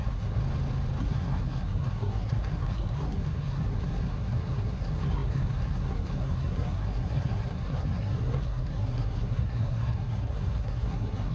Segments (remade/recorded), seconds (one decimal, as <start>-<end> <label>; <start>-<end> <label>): 0.0-0.4 remade; 0.4-1.0 recorded; 1.0-11.3 remade